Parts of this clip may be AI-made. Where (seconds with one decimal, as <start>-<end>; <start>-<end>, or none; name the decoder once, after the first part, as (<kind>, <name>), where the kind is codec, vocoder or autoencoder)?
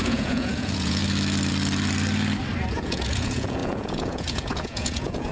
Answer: 0.0-1.0 (vocoder, Vocos); 2.7-5.3